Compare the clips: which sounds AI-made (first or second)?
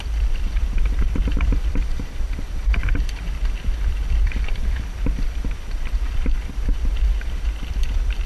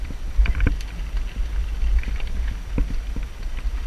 first